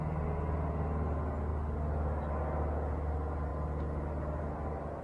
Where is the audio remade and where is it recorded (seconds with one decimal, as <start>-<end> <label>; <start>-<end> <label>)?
0.0-5.0 recorded